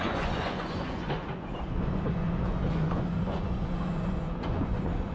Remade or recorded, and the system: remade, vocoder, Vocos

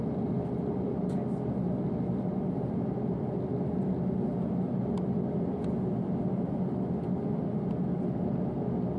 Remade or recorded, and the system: recorded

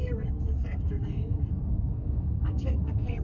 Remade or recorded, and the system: remade, codec, SNAC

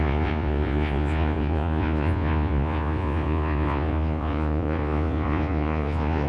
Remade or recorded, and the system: remade, vocoder, Vocos